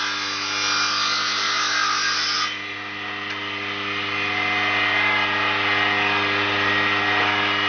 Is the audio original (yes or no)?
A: yes